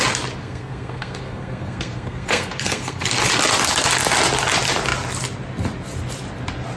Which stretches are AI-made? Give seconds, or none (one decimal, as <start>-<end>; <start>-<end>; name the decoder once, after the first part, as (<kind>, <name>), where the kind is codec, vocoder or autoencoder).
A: 0.4-3.1 (codec, SNAC)